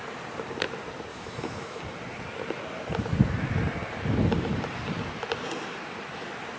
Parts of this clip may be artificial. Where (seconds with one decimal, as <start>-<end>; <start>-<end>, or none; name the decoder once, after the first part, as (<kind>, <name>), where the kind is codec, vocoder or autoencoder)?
1.1-1.8 (autoencoder, DAC-VAE)